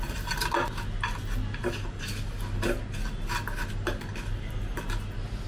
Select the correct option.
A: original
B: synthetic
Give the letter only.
A